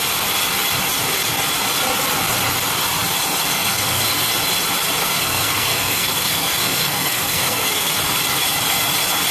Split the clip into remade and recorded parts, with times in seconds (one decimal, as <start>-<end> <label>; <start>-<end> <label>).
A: 0.0-3.4 recorded; 3.4-4.3 remade; 4.3-5.0 recorded; 5.0-8.0 remade; 8.0-9.3 recorded